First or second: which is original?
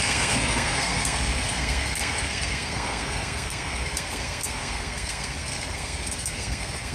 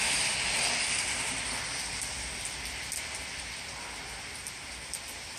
second